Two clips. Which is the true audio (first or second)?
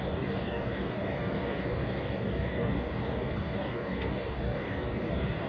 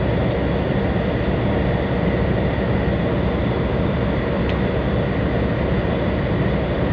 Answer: second